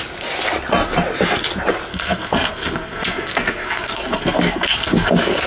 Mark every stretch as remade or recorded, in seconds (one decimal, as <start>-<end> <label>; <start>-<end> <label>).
0.0-1.9 recorded; 1.9-5.5 remade